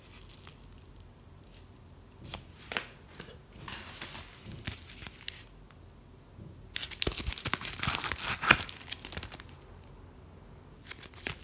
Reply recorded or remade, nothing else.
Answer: recorded